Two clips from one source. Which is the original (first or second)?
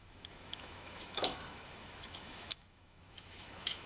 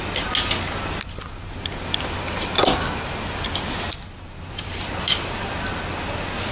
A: second